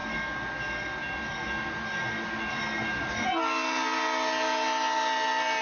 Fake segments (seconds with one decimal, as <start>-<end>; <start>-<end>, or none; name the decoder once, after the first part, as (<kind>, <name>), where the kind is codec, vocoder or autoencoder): none